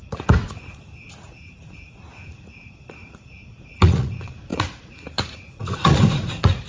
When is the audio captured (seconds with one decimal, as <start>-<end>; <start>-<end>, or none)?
none